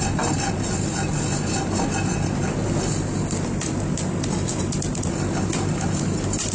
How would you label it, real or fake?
real